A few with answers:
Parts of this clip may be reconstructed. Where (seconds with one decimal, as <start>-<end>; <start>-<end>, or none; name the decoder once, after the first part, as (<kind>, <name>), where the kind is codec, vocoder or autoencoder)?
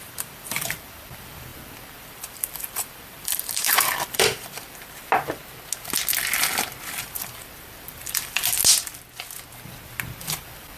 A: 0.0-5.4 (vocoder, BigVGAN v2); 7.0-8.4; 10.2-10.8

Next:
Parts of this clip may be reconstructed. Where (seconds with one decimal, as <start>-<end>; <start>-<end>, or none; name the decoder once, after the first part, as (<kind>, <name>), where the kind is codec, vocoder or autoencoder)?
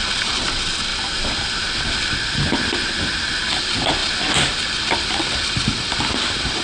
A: 0.9-3.0 (vocoder, BigVGAN v2); 4.0-6.6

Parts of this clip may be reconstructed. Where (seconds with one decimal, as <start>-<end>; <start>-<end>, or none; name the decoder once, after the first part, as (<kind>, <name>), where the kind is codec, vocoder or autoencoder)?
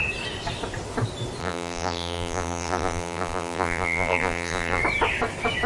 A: 1.4-4.8 (vocoder, BigVGAN v2)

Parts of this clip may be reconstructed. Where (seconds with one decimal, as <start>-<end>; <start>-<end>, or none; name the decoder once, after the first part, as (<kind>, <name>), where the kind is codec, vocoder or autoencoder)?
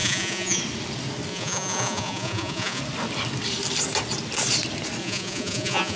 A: 0.0-0.6 (vocoder, Vocos); 1.3-2.8; 5.0-6.0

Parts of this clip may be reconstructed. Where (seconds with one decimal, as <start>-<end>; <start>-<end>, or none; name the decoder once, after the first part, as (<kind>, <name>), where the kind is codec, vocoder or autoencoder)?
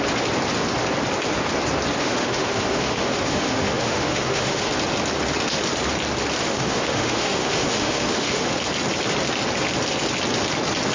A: 2.0-4.7 (autoencoder, DAC-VAE); 6.4-8.5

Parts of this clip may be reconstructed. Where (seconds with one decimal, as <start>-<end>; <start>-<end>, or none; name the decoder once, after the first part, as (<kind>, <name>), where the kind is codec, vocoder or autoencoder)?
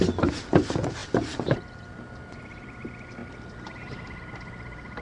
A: none